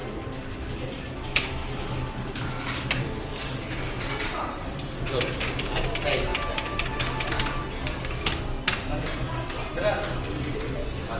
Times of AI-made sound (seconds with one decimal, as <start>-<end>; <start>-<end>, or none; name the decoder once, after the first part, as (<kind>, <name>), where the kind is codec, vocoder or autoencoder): 2.3-6.3 (vocoder, BigVGAN v2); 9.2-11.2